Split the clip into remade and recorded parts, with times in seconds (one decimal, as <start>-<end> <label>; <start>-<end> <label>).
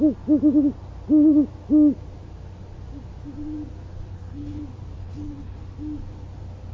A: 0.0-4.1 recorded; 4.1-4.6 remade; 4.6-5.0 recorded; 5.0-5.6 remade; 5.6-6.7 recorded